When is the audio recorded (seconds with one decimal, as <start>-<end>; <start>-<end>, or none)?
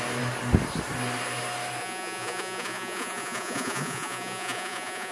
0.0-1.8